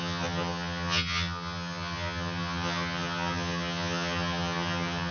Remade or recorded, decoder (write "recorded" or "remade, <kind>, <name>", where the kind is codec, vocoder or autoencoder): remade, vocoder, HiFi-GAN